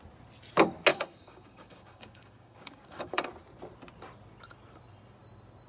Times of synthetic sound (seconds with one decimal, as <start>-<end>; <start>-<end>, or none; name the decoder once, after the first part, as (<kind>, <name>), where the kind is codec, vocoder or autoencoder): 0.9-3.3 (codec, DAC)